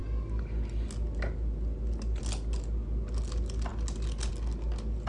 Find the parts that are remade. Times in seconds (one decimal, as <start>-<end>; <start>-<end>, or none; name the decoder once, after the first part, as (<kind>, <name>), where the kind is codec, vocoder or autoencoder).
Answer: none